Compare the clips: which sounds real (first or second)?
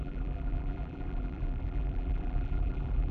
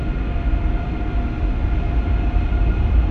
second